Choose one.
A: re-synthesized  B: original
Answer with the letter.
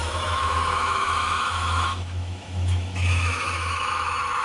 A